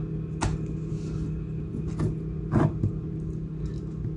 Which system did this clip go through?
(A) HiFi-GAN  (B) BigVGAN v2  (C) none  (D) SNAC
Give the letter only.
C